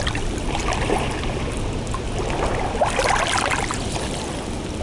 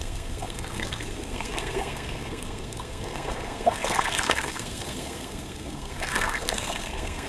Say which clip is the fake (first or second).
second